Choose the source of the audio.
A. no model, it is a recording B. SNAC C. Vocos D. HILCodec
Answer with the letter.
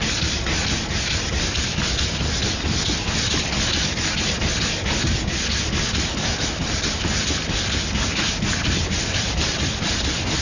A